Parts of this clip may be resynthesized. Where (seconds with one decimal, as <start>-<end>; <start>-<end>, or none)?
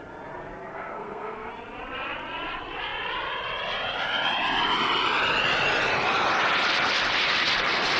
0.7-1.5